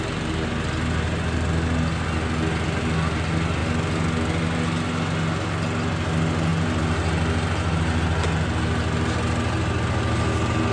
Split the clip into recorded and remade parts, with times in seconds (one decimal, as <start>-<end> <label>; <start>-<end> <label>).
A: 0.0-10.7 recorded